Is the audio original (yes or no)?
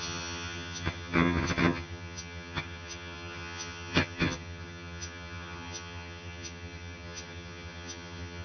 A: no